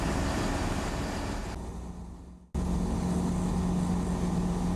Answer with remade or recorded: recorded